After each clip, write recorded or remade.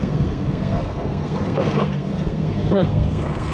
remade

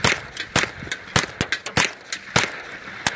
recorded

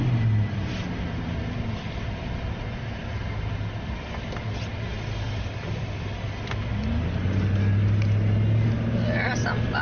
recorded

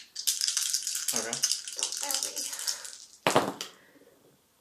recorded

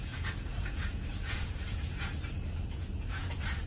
remade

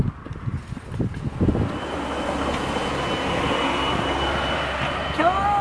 recorded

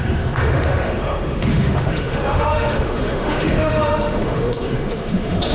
remade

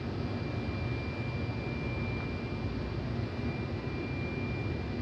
recorded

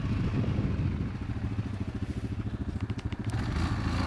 recorded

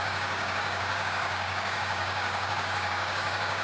remade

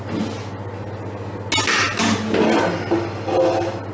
recorded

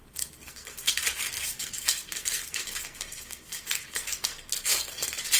remade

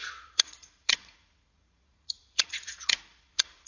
remade